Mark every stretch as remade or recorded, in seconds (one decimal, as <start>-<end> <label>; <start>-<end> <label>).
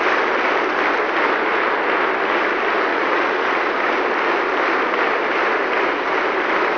0.0-2.9 recorded; 2.9-3.7 remade; 3.7-6.8 recorded